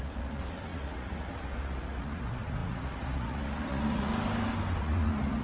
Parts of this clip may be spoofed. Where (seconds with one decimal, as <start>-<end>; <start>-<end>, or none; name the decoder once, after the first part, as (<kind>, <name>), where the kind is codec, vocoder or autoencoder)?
0.0-4.1 (vocoder, Vocos); 4.8-5.4